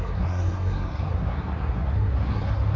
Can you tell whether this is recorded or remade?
remade